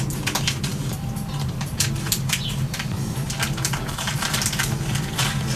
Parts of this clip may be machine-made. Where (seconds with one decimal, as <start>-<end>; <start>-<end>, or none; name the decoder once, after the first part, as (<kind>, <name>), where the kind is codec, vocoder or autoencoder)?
0.7-4.1 (vocoder, BigVGAN v2)